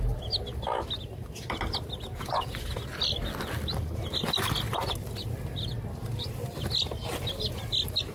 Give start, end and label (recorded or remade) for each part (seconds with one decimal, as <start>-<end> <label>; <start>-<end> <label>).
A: 0.0-2.1 recorded; 2.1-2.7 remade; 2.7-8.1 recorded